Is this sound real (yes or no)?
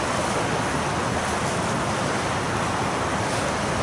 yes